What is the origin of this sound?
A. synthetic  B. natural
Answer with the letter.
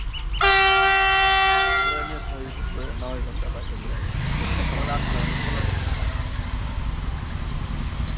B